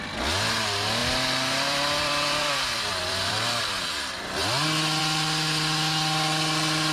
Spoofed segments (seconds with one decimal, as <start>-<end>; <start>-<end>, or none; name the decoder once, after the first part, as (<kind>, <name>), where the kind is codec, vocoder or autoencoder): 1.0-3.6 (vocoder, BigVGAN v2)